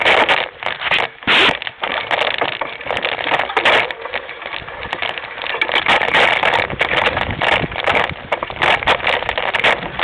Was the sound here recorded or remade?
recorded